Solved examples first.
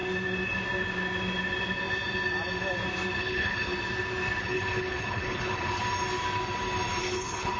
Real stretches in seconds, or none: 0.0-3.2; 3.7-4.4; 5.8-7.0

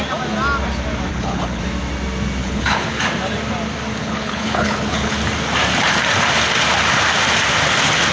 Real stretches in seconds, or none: 0.0-1.1; 1.6-2.4; 3.0-4.0; 5.1-8.1

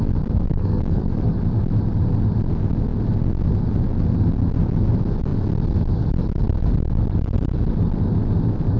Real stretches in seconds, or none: 0.0-0.5; 1.1-8.8

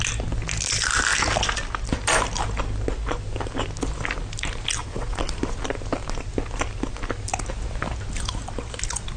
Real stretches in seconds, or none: 0.0-4.8; 5.3-9.2

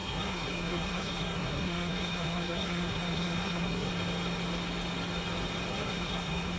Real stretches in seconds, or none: 3.9-5.7

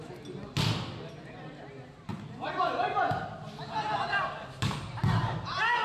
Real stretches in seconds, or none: 0.0-5.8

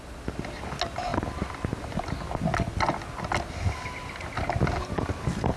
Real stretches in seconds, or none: 0.0-5.6

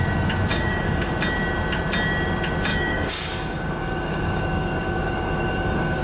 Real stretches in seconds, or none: 0.0-0.5; 1.1-2.7